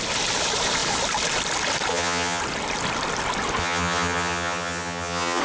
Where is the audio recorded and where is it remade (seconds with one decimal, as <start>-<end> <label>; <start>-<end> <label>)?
0.0-1.9 recorded; 1.9-2.4 remade; 2.4-3.6 recorded; 3.6-5.4 remade